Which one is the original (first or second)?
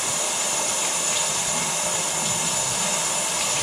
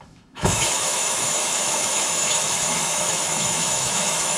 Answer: first